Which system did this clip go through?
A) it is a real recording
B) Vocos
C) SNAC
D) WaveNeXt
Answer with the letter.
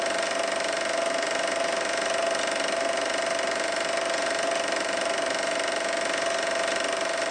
A